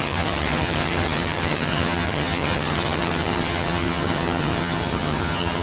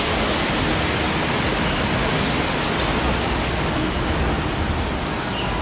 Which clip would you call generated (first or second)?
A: first